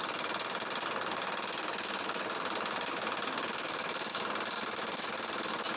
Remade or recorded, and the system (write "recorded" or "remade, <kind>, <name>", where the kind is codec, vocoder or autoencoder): recorded